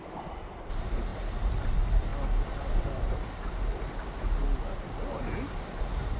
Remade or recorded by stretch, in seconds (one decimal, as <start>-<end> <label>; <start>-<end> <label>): 0.0-2.1 remade; 2.1-5.8 recorded; 5.8-6.2 remade